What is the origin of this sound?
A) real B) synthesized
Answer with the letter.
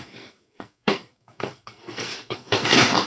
B